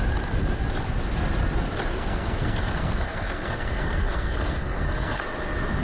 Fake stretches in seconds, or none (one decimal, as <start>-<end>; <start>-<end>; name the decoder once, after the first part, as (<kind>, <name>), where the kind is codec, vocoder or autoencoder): 1.9-5.2 (codec, SNAC)